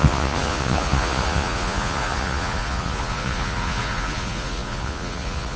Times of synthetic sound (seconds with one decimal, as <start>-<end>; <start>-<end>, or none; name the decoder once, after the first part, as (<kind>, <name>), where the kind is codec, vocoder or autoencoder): 0.0-5.6 (vocoder, Vocos)